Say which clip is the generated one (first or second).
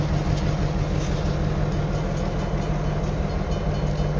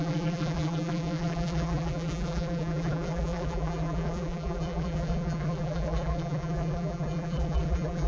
second